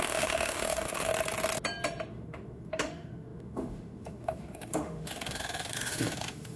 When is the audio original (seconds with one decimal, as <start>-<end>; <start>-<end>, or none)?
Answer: 1.1-2.1